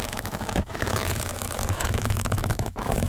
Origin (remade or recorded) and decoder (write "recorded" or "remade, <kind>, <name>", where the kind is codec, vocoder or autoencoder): remade, autoencoder, DAC-VAE